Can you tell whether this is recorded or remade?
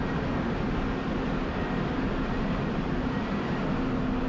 recorded